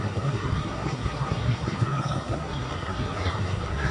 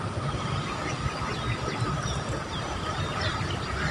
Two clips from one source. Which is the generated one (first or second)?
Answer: first